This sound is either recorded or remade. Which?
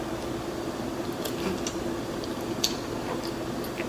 recorded